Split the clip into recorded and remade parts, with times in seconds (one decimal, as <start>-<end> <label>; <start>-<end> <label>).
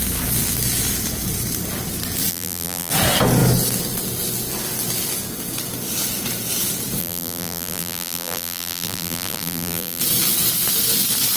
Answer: 0.0-2.3 recorded; 2.3-2.9 remade; 2.9-7.0 recorded; 7.0-10.0 remade; 10.0-11.4 recorded